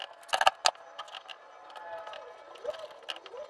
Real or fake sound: real